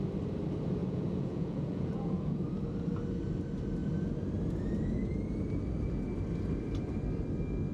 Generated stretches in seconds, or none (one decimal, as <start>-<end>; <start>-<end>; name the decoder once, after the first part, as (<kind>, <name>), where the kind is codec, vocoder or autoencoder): 0.8-2.4 (vocoder, Vocos)